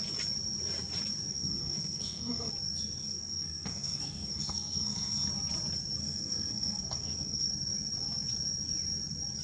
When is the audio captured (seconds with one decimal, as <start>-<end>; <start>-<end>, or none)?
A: 0.0-1.3; 2.5-3.0; 5.3-6.0; 7.5-9.4